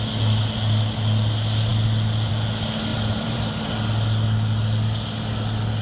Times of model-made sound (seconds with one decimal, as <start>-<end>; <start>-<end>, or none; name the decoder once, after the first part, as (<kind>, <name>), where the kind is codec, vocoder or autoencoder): 2.9-3.8 (vocoder, BigVGAN v2)